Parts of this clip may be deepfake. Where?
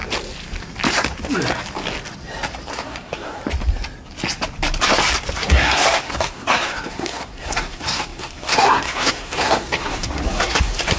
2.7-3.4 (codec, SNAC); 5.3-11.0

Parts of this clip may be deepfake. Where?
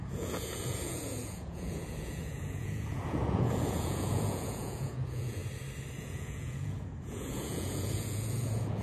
0.0-5.4 (vocoder, Vocos); 6.0-8.8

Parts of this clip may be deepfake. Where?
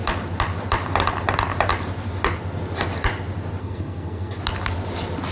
3.6-4.4 (codec, SNAC)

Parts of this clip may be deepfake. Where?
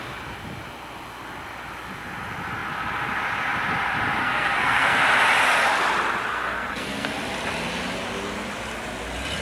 4.2-5.0 (codec, SNAC); 6.3-7.1